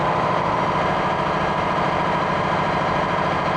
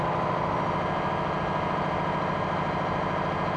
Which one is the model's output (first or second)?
first